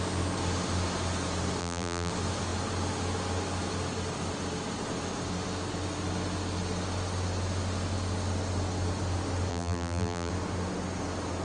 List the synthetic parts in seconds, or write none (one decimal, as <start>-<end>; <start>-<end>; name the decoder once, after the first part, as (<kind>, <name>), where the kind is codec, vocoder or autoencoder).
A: 1.6-2.1 (vocoder, BigVGAN v2); 9.5-10.3